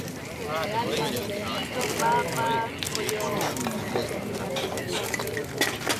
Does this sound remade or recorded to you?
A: recorded